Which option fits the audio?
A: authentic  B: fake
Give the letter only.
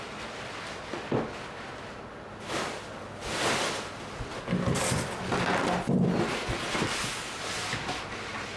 A